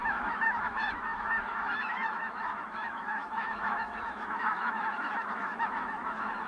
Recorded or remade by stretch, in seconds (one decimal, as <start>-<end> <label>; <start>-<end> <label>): 0.0-6.5 remade